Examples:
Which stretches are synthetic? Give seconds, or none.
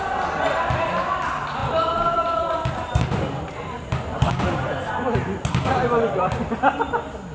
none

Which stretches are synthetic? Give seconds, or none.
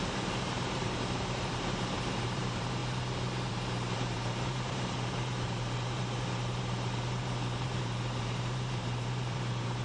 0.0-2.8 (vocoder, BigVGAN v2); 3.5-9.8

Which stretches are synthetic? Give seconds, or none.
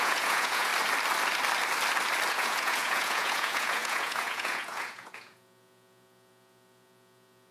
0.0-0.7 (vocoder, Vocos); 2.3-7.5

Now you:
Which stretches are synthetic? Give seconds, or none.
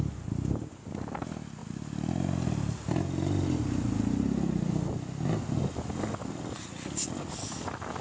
none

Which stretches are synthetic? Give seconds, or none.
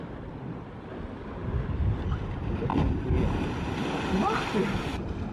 none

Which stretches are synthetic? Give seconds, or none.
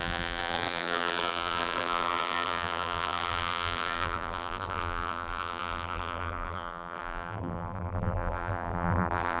0.0-9.4 (vocoder, BigVGAN v2)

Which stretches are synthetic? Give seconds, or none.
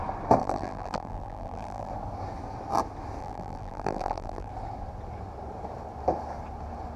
0.4-1.9 (vocoder, BigVGAN v2); 3.2-4.5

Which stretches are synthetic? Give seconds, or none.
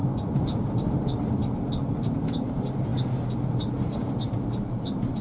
0.7-1.4 (vocoder, BigVGAN v2); 1.9-5.2